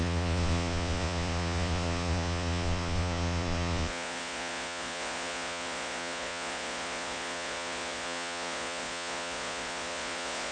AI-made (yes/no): yes